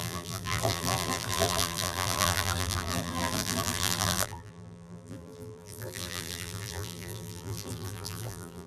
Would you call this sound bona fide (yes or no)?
no